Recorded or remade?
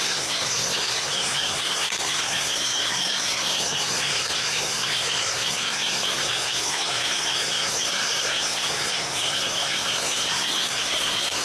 remade